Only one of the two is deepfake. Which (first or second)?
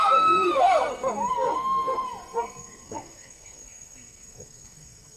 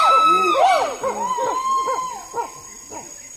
first